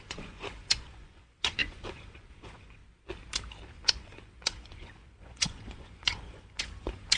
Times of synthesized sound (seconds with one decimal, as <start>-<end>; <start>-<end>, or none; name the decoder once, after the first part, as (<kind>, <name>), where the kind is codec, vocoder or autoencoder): 0.0-2.8 (vocoder, Vocos); 3.7-7.2